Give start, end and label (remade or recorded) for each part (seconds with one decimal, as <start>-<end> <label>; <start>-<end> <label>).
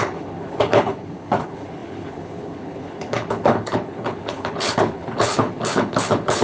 0.0-6.4 remade